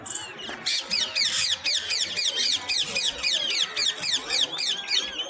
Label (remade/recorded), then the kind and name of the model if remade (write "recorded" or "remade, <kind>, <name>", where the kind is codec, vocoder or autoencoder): recorded